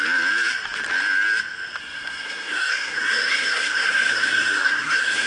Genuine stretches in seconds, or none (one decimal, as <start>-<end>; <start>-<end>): 0.0-1.8